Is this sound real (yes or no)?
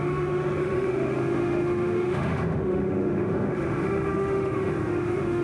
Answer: no